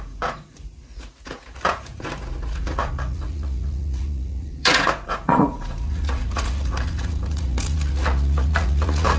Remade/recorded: remade